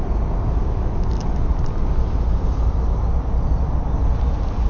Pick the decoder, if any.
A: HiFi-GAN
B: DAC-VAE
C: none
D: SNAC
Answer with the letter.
C